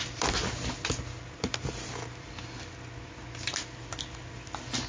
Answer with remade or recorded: recorded